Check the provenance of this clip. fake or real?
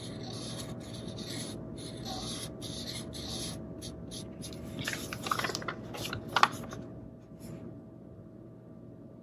real